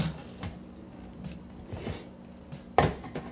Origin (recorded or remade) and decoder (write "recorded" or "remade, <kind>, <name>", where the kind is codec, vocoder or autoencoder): recorded